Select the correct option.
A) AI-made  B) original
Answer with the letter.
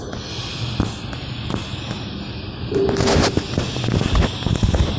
B